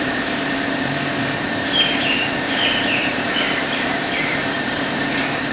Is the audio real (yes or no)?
no